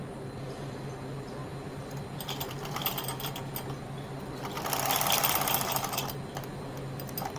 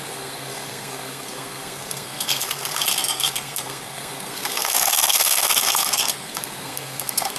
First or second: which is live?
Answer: first